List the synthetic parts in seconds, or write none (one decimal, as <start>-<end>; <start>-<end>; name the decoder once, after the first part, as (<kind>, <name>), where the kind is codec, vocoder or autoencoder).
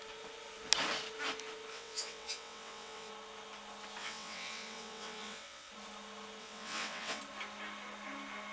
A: 1.7-3.1 (vocoder, WaveNeXt); 4.0-5.7; 6.4-7.2